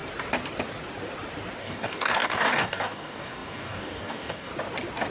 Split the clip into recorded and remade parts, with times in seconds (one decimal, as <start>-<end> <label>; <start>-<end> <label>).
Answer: 0.0-1.6 recorded; 1.6-4.5 remade; 4.5-5.1 recorded